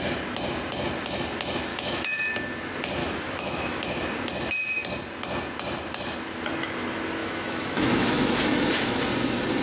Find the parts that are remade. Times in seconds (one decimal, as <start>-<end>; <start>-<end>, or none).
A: 1.7-2.3; 3.0-3.8; 7.2-9.0